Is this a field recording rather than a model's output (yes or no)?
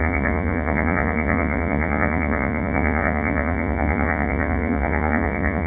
no